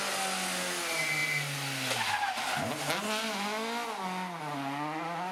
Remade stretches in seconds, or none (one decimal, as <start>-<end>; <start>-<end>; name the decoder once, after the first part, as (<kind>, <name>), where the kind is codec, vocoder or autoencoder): none